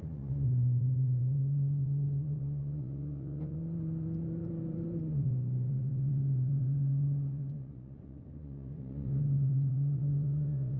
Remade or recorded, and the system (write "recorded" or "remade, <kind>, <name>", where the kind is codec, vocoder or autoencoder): remade, vocoder, Vocos